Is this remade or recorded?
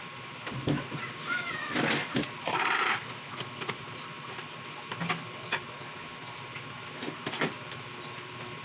recorded